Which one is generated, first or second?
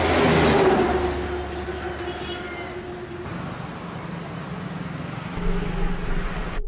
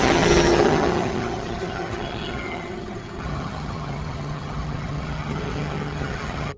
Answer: second